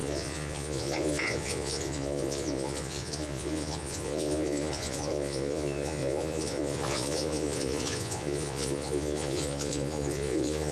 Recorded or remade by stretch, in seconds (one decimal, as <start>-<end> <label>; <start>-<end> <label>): 0.0-10.7 remade